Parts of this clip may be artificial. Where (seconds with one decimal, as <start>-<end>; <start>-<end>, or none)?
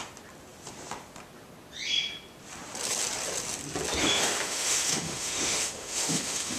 4.0-6.6